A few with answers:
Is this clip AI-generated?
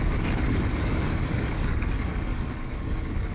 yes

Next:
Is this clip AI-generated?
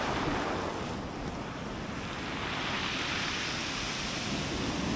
no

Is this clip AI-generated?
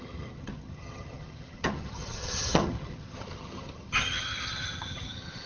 yes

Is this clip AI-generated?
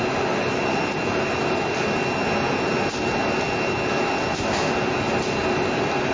no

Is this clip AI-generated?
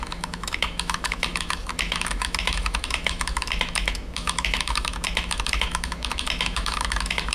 yes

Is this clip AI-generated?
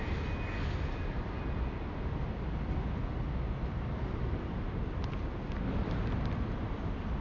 no